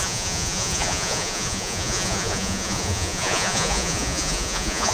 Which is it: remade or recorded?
remade